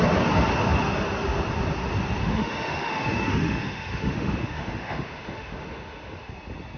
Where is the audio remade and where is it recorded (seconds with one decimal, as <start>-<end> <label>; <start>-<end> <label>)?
0.0-2.2 recorded; 2.2-6.3 remade; 6.3-6.8 recorded